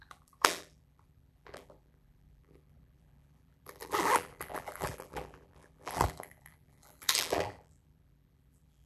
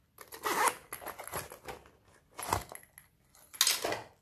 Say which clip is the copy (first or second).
first